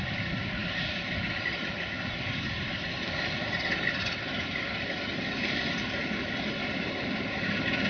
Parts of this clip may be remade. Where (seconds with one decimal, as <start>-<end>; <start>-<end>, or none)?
none